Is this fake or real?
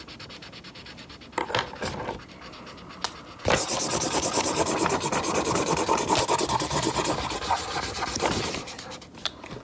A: real